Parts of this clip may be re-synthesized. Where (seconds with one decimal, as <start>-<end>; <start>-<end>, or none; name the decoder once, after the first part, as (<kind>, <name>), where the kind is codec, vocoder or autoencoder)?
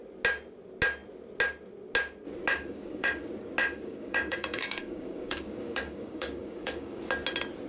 2.5-3.2 (codec, DAC); 3.6-7.1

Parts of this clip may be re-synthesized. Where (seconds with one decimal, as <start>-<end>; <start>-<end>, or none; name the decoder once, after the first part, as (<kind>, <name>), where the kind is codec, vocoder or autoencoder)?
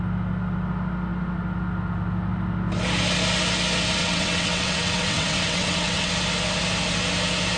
4.0-6.1 (vocoder, WaveNeXt)